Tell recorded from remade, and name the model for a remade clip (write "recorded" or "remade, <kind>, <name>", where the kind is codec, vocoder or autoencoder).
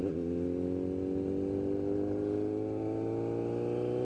recorded